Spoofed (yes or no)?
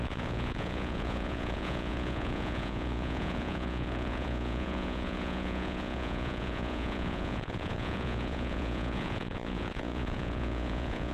yes